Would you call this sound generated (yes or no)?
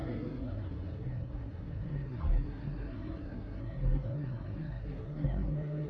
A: yes